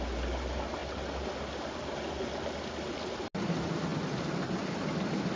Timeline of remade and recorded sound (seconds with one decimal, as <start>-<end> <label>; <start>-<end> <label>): 0.0-5.4 recorded